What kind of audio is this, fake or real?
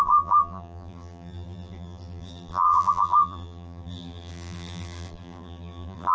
fake